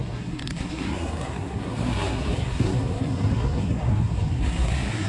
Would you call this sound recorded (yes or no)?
no